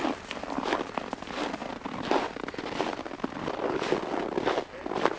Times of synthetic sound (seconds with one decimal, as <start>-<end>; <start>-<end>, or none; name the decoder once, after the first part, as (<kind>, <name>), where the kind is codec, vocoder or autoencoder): none